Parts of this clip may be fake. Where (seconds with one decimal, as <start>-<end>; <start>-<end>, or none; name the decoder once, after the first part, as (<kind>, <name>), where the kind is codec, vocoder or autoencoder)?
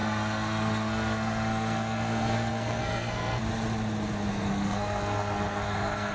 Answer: 0.0-3.4 (codec, SNAC); 4.3-6.1